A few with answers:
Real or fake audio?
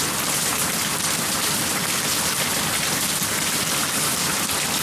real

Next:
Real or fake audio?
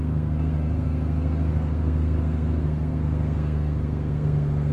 fake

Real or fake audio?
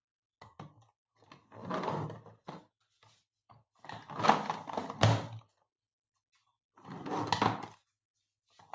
real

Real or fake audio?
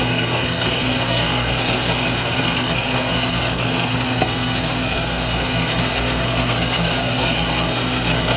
fake